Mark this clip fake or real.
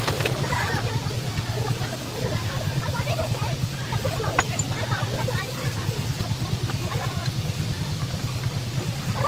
real